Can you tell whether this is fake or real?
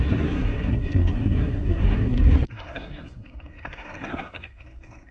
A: fake